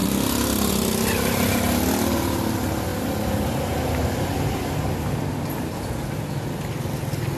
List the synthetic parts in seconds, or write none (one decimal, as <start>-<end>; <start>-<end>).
none